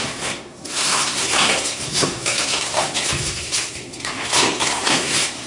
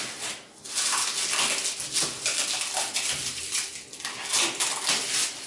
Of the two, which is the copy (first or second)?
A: first